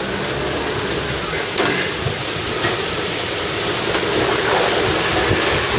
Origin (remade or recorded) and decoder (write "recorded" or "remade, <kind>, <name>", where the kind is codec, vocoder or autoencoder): recorded